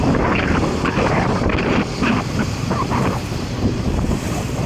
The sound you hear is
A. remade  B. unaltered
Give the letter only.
A